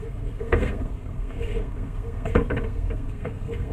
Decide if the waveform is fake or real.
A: fake